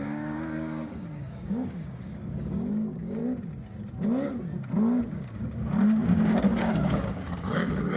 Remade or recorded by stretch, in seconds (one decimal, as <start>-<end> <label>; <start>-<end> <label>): 0.0-3.2 remade; 3.2-5.1 recorded; 5.1-8.0 remade